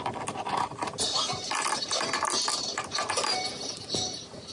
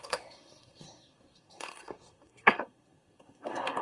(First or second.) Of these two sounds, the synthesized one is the second